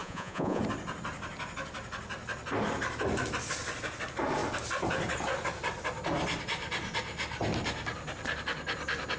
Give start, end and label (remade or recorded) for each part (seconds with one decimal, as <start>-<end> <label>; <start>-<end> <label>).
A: 0.0-0.6 remade; 0.6-9.2 recorded